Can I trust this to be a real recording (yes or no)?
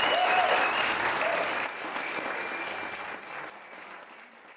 yes